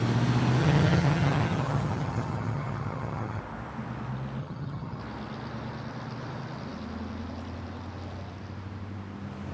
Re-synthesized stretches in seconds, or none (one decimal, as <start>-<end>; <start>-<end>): 0.6-3.4; 4.4-5.0